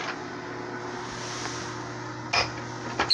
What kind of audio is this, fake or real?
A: real